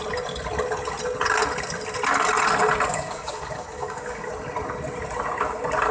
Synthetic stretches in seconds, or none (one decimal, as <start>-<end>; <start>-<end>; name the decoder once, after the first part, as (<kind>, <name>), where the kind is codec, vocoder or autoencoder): 2.9-4.3 (codec, DAC)